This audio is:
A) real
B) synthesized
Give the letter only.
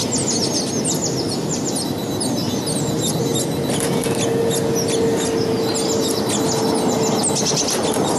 A